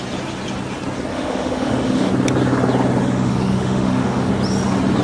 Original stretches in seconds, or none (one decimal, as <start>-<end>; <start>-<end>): 0.0-1.1; 2.1-3.0; 4.3-5.0